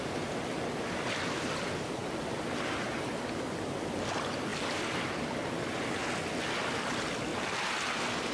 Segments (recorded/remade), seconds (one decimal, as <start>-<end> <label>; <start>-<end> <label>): 0.0-8.3 recorded